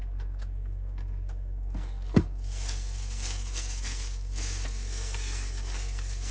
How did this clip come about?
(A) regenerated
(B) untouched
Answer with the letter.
A